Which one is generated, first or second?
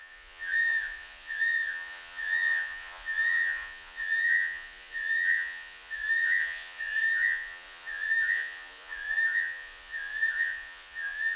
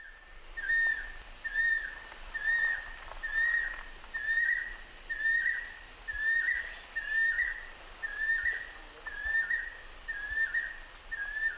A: first